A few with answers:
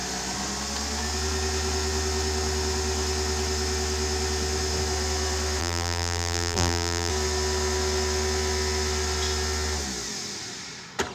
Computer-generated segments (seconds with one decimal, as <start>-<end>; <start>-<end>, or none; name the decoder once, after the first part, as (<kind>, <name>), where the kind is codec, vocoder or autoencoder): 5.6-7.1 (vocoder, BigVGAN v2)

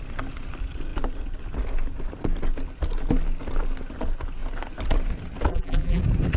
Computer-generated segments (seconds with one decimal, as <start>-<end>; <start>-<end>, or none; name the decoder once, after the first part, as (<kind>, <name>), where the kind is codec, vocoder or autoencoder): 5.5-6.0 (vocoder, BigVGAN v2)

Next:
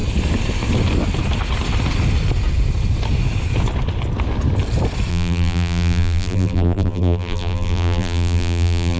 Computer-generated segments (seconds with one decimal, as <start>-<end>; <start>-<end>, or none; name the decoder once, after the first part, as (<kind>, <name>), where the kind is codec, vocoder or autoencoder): 5.1-9.0 (vocoder, BigVGAN v2)

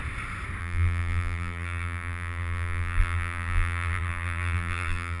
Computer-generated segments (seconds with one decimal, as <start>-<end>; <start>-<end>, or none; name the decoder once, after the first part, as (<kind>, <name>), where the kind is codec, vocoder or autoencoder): 0.6-5.2 (vocoder, BigVGAN v2)

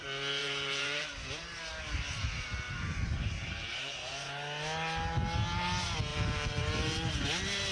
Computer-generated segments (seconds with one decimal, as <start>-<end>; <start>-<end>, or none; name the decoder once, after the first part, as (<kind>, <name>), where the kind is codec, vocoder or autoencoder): 0.4-1.1 (vocoder, BigVGAN v2); 3.4-4.1; 6.1-7.1

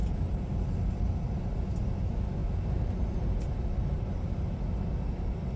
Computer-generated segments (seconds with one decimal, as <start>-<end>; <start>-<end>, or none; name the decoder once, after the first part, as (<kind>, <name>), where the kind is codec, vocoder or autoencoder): none